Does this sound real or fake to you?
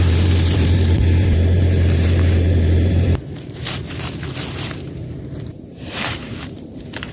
fake